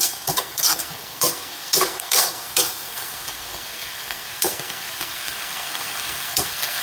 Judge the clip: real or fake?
fake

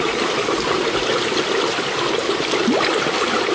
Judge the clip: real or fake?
real